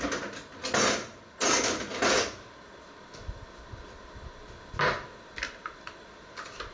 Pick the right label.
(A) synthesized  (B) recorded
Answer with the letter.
B